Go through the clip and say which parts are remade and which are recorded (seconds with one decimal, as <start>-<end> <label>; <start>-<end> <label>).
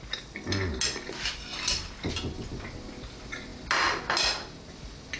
0.0-5.2 recorded